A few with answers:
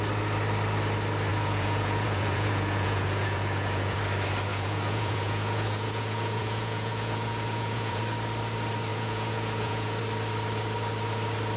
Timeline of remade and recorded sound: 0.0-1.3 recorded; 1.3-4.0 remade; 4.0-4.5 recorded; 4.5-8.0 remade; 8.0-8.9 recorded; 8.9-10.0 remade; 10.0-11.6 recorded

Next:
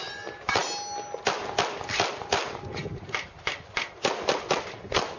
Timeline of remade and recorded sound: 0.0-5.2 recorded

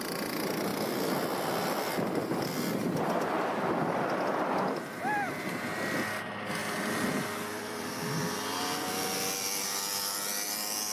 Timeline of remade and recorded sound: 0.0-6.6 recorded; 6.6-8.6 remade; 8.6-10.9 recorded

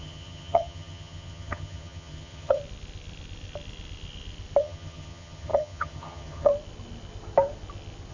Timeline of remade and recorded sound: 0.0-2.6 remade; 2.6-4.6 recorded; 4.6-6.5 remade; 6.5-8.1 recorded

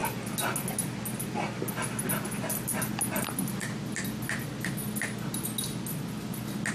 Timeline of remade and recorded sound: 0.0-6.7 recorded

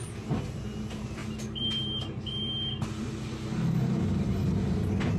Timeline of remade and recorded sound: 0.0-5.2 recorded